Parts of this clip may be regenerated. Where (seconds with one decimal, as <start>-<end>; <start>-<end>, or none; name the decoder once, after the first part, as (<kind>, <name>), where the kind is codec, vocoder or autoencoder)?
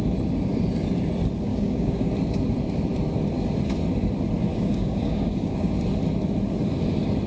1.5-2.1 (codec, DAC); 4.5-5.7